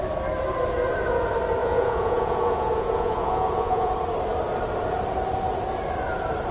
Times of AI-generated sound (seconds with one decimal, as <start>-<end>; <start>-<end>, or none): 1.6-3.9

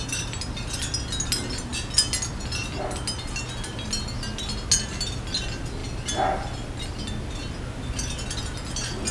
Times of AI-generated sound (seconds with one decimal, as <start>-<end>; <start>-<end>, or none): none